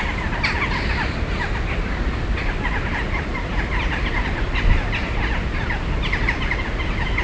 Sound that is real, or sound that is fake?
real